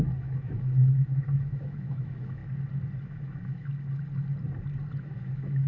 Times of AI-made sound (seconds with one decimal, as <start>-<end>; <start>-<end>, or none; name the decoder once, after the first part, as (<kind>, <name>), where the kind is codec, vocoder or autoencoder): 0.0-2.4 (autoencoder, DAC-VAE); 3.0-3.7; 5.0-5.7